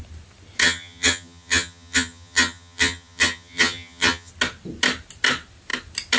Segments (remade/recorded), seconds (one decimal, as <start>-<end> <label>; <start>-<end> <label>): 0.0-0.6 recorded; 0.6-4.3 remade; 4.3-6.2 recorded